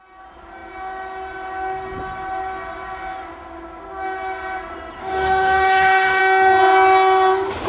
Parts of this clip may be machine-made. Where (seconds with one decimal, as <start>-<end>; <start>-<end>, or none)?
5.0-6.2